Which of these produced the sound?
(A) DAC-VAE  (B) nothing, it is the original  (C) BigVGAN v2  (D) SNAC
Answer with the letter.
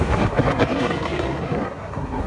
D